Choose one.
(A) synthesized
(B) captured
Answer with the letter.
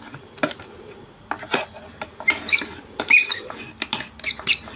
B